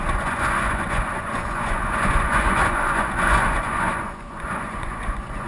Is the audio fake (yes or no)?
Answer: yes